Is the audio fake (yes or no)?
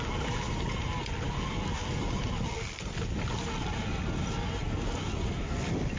no